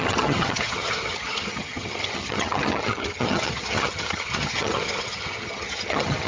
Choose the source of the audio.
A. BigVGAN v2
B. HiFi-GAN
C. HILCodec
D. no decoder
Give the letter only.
B